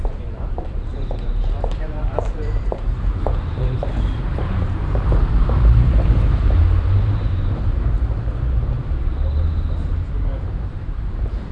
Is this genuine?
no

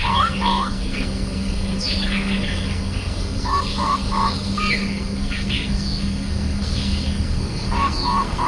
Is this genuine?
no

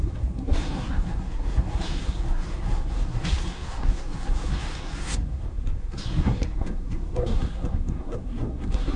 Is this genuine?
no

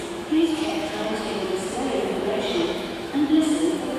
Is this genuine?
no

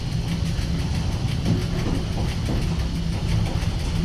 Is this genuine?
yes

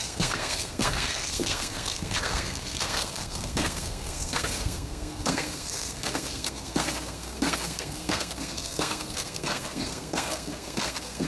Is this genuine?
no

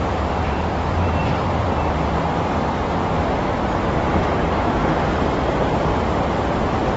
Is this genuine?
no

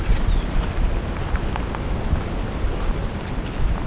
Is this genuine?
no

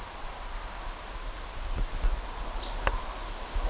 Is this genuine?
yes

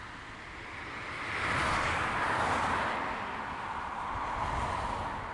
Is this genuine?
yes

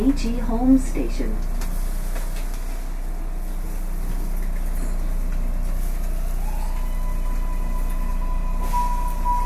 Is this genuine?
yes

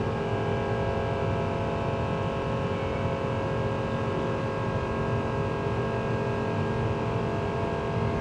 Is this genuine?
yes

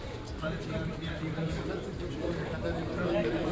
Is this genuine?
no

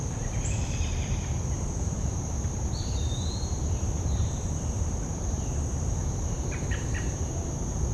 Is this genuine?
no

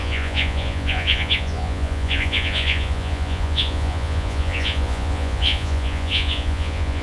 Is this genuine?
no